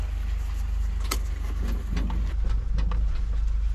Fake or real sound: real